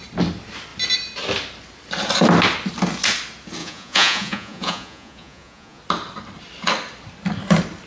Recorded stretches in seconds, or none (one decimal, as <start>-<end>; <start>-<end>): 0.0-3.6; 5.8-7.9